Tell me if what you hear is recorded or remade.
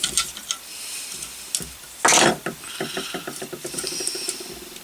recorded